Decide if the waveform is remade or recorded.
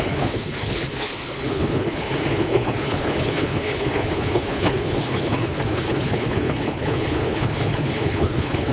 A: remade